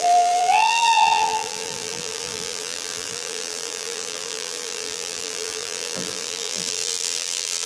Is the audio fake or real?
fake